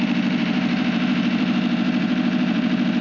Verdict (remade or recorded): remade